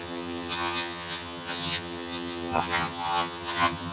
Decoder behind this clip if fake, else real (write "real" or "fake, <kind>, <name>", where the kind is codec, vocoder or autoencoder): fake, vocoder, HiFi-GAN